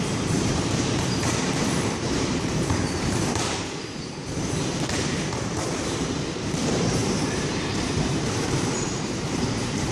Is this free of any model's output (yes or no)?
no